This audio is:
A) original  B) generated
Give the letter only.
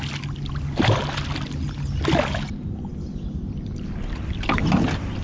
A